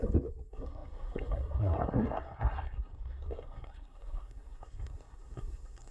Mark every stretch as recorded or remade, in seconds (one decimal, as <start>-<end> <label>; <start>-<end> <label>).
0.0-5.9 remade